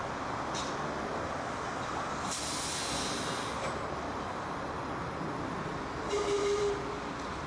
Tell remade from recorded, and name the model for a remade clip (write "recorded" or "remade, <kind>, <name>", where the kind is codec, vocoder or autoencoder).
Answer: recorded